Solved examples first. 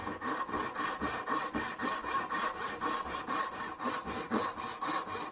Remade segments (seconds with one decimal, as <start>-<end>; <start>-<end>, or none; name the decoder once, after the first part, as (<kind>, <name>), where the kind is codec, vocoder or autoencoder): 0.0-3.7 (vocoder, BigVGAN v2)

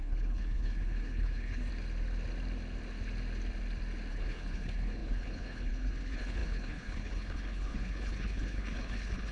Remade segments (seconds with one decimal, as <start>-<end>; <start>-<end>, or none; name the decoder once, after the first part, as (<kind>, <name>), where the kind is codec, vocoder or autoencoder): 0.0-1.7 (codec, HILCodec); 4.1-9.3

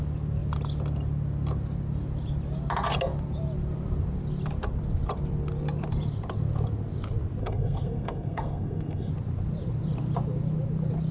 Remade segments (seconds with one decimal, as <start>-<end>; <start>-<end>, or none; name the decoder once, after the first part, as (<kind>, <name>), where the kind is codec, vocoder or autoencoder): 7.4-9.1 (codec, SNAC)

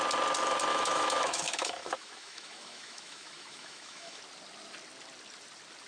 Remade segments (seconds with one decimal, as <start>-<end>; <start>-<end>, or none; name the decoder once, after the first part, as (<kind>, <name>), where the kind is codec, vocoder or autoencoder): 0.7-4.2 (autoencoder, DAC-VAE)

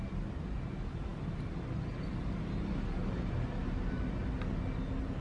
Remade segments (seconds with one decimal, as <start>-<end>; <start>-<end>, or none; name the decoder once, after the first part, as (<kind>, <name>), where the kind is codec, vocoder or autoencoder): none

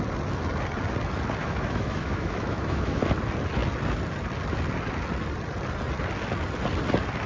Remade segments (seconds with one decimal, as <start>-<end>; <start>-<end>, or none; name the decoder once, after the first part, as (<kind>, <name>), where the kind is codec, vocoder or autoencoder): 1.4-3.0 (autoencoder, DAC-VAE)